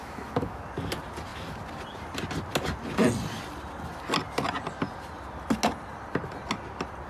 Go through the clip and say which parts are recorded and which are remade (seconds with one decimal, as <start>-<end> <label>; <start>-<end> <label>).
0.0-0.6 remade; 0.6-7.1 recorded